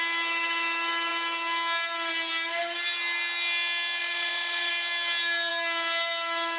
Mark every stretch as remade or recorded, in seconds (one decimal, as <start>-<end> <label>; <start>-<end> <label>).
0.0-4.0 recorded; 4.0-4.7 remade; 4.7-6.6 recorded